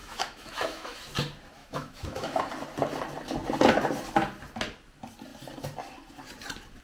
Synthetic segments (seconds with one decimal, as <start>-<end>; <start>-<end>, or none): 0.0-1.0; 1.6-2.5